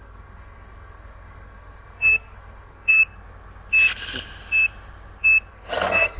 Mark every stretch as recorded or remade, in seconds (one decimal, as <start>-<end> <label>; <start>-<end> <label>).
0.0-3.0 remade; 3.0-5.5 recorded; 5.5-6.2 remade